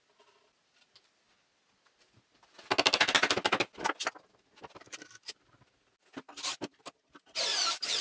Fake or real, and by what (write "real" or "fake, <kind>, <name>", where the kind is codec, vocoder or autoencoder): real